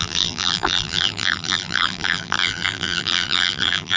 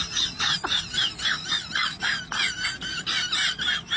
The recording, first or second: second